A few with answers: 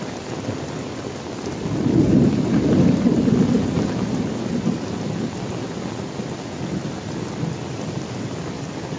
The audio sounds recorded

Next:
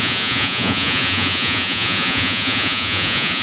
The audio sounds remade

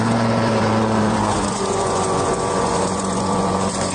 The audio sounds remade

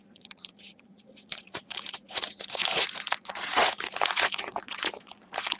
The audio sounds remade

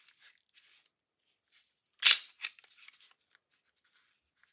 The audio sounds recorded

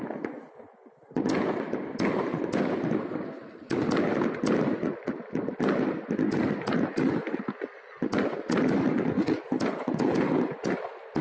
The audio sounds recorded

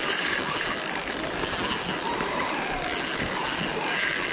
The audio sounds recorded